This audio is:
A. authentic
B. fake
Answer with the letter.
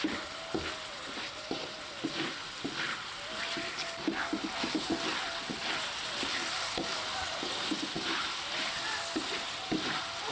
A